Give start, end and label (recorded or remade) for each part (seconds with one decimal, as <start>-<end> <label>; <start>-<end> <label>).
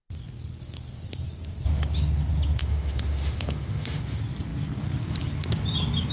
0.0-2.6 recorded; 2.6-4.0 remade; 4.0-6.1 recorded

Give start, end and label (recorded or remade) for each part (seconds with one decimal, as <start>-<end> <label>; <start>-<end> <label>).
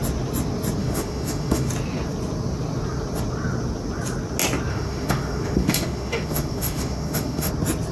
0.0-0.8 recorded; 0.8-1.7 remade; 1.7-4.7 recorded; 4.7-7.5 remade; 7.5-7.9 recorded